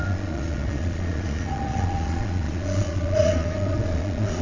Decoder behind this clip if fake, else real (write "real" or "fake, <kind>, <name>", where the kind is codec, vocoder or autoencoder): fake, vocoder, Vocos